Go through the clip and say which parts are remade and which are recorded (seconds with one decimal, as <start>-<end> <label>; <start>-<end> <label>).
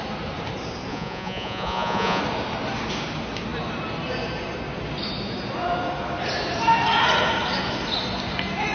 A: 0.0-0.9 recorded; 0.9-2.2 remade; 2.2-8.7 recorded